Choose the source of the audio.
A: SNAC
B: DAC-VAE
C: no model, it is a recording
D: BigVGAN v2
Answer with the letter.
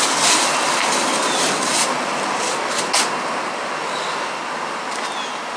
C